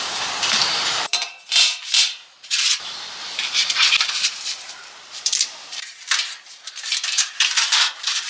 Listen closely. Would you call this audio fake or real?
fake